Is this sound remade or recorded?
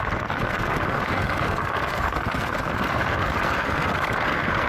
remade